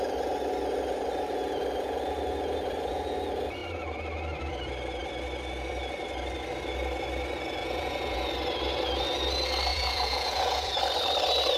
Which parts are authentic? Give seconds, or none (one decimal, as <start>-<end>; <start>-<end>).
0.0-7.6; 8.3-9.7; 10.8-11.6

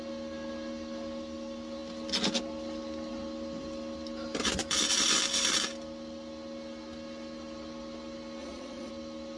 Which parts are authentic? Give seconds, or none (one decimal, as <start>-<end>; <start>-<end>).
0.0-8.4; 8.9-9.4

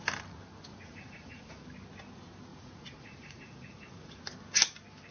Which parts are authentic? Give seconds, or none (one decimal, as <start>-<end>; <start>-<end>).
0.0-0.7; 1.5-2.5; 4.2-5.1

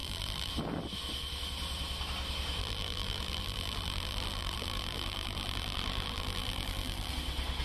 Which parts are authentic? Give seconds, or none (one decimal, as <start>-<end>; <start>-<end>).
0.5-2.6; 7.1-7.6

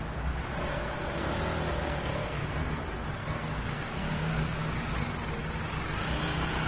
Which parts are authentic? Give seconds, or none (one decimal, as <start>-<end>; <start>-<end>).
0.0-0.7; 1.3-1.8; 2.8-3.2; 4.7-6.7

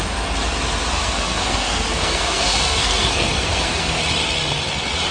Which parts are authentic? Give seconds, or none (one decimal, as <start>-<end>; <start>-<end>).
0.0-0.9; 4.0-5.1

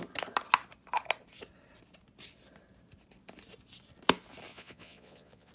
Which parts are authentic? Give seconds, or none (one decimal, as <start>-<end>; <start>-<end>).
0.0-4.5